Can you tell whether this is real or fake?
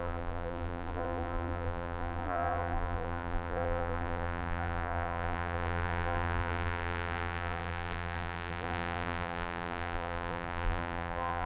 fake